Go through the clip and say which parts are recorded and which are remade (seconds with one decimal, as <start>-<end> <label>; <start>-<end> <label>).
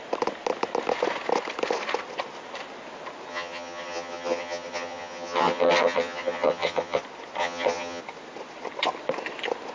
0.0-3.3 recorded; 3.3-7.0 remade; 7.0-7.4 recorded; 7.4-8.0 remade; 8.0-9.7 recorded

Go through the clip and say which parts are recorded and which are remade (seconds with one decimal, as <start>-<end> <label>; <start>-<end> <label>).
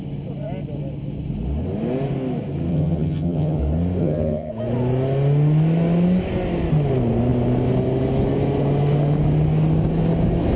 0.0-2.7 recorded; 2.7-3.6 remade; 3.6-4.0 recorded; 4.0-4.5 remade; 4.5-10.6 recorded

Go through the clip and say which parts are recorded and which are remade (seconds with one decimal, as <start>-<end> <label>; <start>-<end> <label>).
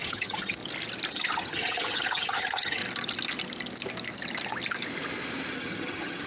0.0-0.6 remade; 0.6-1.1 recorded; 1.1-2.8 remade; 2.8-5.5 recorded; 5.5-6.3 remade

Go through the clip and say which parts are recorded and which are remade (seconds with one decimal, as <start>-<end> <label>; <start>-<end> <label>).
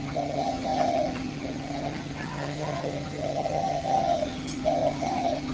0.0-5.5 remade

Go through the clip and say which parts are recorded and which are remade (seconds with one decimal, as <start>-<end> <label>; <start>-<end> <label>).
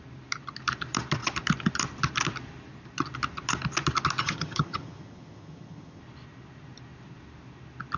0.0-4.2 recorded; 4.2-6.0 remade; 6.0-8.0 recorded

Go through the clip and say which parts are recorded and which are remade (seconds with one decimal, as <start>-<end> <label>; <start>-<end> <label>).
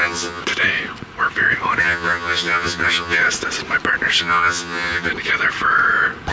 0.0-0.4 remade; 0.4-1.8 recorded; 1.8-3.2 remade; 3.2-4.2 recorded; 4.2-5.1 remade; 5.1-6.3 recorded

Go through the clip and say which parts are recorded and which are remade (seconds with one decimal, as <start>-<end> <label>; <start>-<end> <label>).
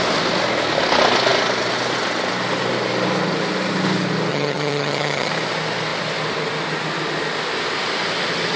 0.0-4.3 recorded; 4.3-5.3 remade; 5.3-8.6 recorded